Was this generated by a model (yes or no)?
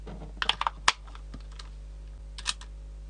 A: no